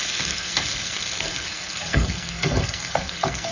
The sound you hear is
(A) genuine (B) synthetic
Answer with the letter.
B